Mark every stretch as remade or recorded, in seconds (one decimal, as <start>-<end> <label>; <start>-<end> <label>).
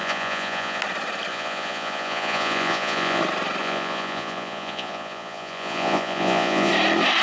0.0-0.8 remade; 0.8-1.3 recorded; 1.3-3.2 remade; 3.2-3.6 recorded; 3.6-6.7 remade; 6.7-7.2 recorded